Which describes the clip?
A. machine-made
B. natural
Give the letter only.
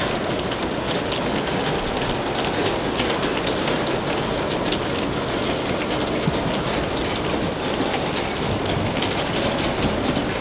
B